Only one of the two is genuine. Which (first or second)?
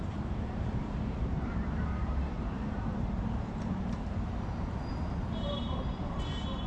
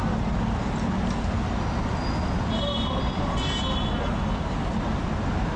second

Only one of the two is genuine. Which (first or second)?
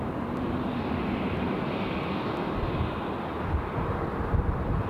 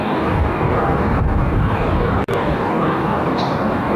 first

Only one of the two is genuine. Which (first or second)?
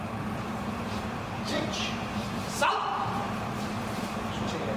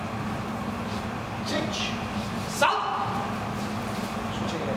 second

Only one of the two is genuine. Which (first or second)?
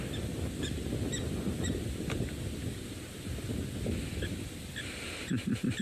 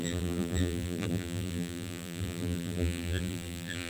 first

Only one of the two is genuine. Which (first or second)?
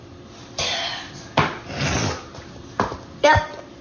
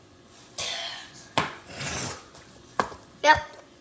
first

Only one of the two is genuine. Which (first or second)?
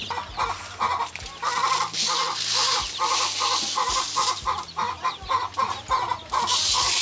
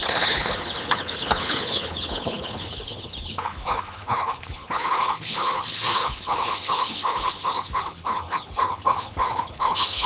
first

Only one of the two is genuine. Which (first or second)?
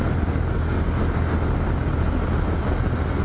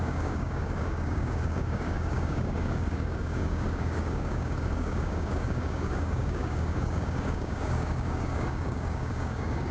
first